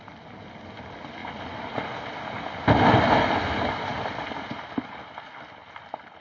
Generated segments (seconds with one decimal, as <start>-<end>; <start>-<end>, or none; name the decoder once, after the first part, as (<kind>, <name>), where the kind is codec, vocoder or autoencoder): 1.2-2.4 (vocoder, BigVGAN v2); 3.9-4.5